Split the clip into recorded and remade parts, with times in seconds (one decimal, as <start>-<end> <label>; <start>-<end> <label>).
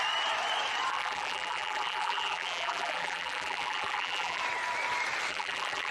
0.0-0.9 recorded; 0.9-4.4 remade; 4.4-5.3 recorded; 5.3-5.9 remade